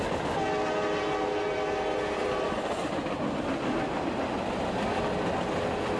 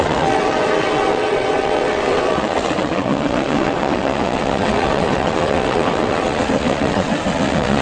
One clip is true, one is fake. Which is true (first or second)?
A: first